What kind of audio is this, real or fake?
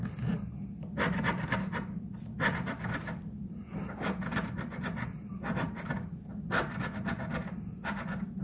fake